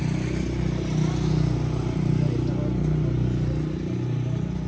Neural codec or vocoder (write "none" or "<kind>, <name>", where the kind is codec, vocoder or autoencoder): none